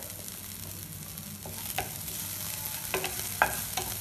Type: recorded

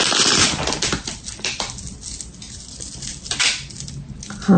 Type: recorded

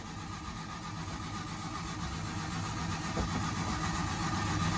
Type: recorded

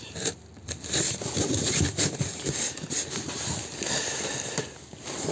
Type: recorded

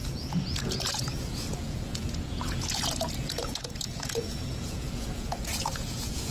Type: remade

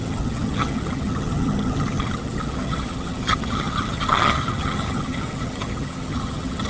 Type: remade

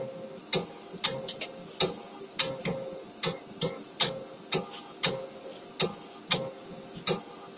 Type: recorded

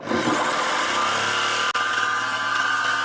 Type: recorded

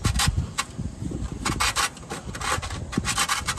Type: recorded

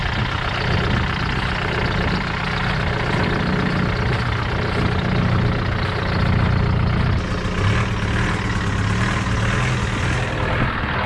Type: recorded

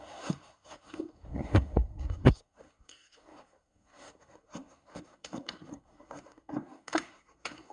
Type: remade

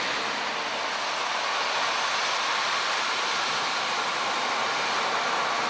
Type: recorded